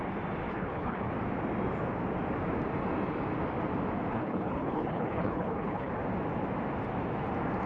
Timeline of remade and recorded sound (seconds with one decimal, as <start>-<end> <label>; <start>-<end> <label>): 0.0-0.5 recorded; 0.5-1.1 remade; 1.1-4.1 recorded; 4.1-5.9 remade; 5.9-7.7 recorded